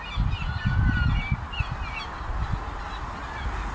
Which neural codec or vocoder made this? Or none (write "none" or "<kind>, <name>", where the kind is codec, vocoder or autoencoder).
none